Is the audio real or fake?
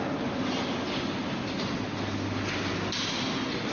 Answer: real